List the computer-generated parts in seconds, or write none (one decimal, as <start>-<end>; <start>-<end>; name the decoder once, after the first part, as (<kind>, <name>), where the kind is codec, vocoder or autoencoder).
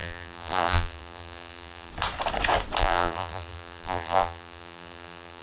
0.0-1.9 (vocoder, BigVGAN v2); 2.8-5.4